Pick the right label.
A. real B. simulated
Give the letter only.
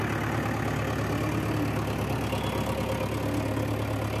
A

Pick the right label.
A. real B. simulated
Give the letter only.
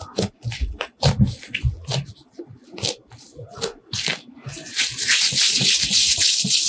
A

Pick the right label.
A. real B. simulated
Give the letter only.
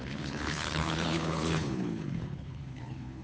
B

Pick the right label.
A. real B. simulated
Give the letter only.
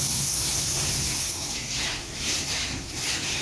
B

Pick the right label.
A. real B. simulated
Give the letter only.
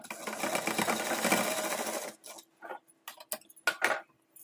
A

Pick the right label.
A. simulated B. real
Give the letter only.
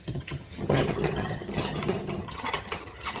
A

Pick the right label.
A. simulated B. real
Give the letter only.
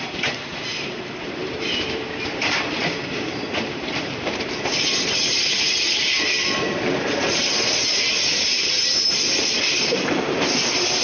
A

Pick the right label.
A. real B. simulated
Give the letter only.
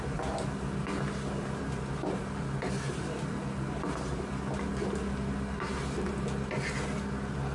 A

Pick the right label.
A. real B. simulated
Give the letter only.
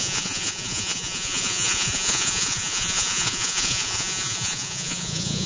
B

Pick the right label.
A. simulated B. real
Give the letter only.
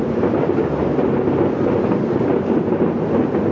B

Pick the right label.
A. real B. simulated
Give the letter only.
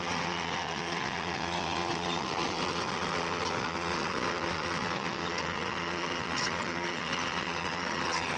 B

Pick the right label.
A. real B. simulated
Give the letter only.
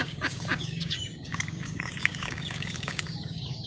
B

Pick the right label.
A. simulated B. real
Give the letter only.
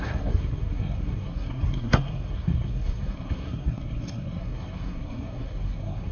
A